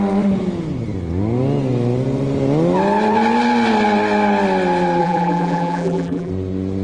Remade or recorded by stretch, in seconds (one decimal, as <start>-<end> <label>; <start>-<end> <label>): 0.0-5.0 recorded; 5.0-6.3 remade; 6.3-6.8 recorded